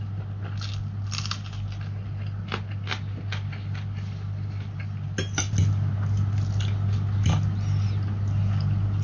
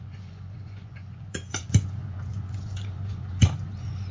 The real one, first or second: first